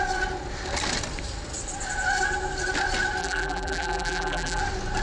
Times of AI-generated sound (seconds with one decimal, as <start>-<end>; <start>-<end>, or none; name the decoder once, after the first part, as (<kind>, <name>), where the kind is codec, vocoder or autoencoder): 3.2-4.6 (vocoder, BigVGAN v2)